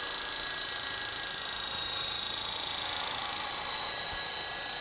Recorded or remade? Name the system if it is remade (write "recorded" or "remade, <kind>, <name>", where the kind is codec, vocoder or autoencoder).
recorded